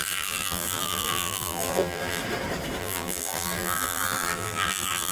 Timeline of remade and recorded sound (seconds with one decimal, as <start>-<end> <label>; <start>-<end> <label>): 0.0-2.2 remade; 2.2-2.8 recorded; 2.8-5.1 remade